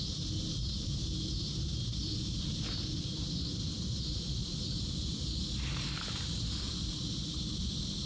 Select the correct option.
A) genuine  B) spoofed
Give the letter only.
B